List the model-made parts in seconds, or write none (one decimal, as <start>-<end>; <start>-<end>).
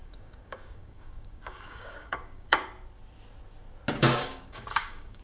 0.0-2.7; 4.0-5.2